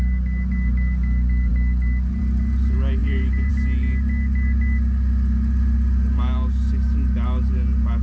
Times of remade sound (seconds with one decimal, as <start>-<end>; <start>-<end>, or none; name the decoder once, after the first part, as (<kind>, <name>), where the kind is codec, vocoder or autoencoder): 3.0-3.5 (vocoder, BigVGAN v2)